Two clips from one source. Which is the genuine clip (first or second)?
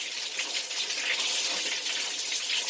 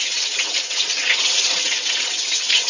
first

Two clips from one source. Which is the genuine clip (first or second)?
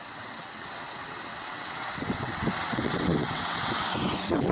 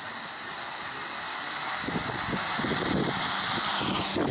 second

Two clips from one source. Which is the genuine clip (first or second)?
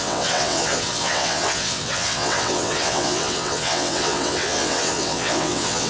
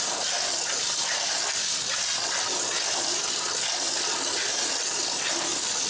second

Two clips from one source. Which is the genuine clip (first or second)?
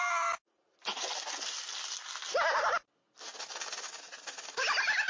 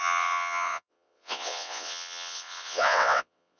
first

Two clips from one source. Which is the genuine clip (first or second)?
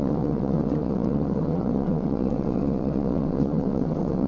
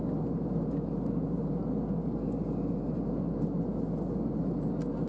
second